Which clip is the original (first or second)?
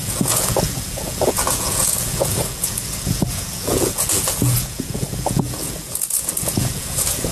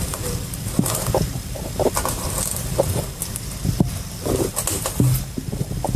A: second